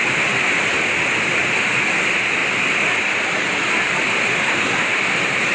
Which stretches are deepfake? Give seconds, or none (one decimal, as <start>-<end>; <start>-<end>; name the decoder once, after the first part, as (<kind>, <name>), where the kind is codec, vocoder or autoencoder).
none